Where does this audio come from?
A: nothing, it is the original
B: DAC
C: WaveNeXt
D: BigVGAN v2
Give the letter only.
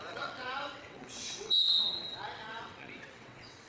C